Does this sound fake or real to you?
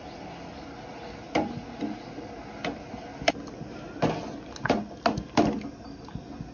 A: real